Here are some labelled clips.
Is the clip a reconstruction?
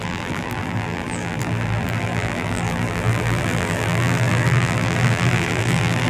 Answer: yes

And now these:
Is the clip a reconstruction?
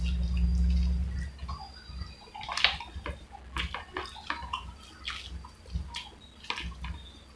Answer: no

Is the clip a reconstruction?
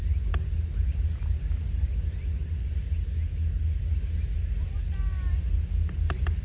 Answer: no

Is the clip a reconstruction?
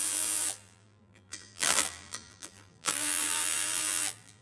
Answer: yes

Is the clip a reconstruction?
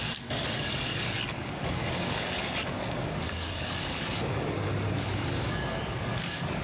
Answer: yes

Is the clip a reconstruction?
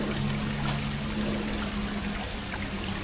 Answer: no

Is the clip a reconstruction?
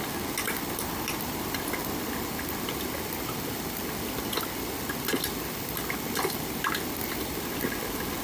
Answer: no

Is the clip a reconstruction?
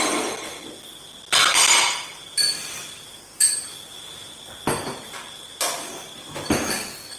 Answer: no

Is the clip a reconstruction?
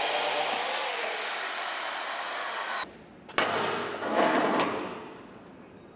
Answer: no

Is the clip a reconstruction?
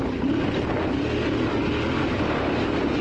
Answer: no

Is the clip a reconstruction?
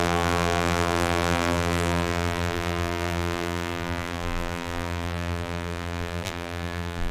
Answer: yes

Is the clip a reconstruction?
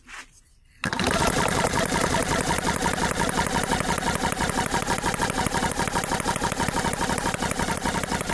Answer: no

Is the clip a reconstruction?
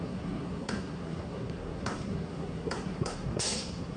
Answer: yes